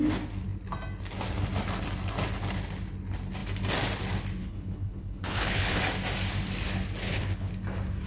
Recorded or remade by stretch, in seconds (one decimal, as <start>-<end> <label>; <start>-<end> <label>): 0.0-4.4 recorded; 4.4-5.8 remade; 5.8-7.0 recorded; 7.0-7.5 remade; 7.5-8.1 recorded